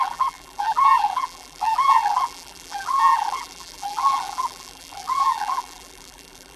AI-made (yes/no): yes